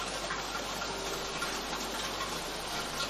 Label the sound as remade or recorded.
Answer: recorded